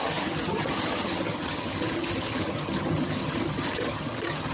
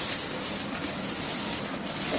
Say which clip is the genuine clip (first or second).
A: second